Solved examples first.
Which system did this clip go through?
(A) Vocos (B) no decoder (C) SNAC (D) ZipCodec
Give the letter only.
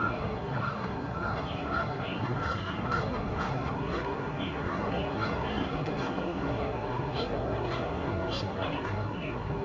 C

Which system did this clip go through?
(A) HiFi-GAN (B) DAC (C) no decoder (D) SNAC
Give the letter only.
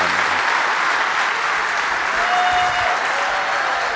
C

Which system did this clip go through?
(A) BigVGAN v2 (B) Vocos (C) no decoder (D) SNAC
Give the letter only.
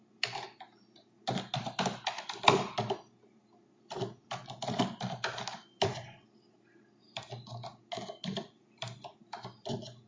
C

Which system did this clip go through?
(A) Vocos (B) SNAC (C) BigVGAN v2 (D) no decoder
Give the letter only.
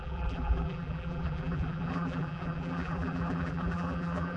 C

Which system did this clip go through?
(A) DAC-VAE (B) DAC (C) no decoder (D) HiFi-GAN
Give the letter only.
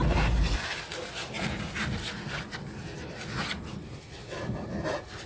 C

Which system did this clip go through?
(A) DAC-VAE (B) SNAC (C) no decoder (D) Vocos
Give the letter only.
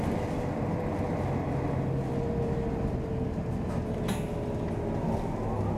C